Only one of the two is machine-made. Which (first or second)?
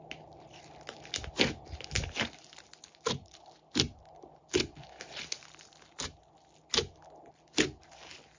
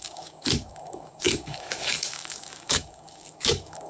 second